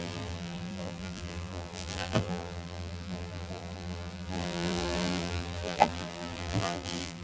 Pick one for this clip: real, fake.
fake